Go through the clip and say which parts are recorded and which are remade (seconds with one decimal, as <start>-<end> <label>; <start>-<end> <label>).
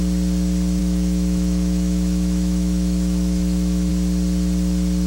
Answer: 0.0-0.8 recorded; 0.8-3.9 remade; 3.9-5.1 recorded